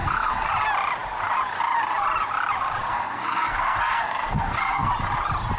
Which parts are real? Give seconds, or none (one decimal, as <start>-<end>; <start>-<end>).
0.5-2.8; 4.9-5.6